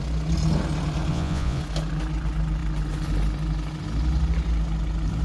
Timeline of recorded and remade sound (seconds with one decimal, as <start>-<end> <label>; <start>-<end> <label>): 0.0-1.1 recorded; 1.1-1.6 remade; 1.6-5.2 recorded